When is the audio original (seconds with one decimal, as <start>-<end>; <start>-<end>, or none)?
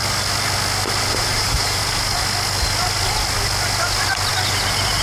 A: 0.0-1.1; 1.8-4.5